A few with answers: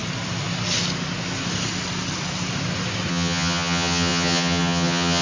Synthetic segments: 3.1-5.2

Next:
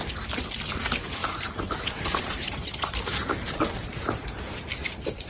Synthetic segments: none